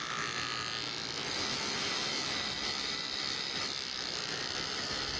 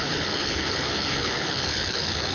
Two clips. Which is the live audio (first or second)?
first